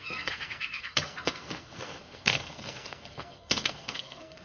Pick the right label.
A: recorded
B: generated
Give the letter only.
B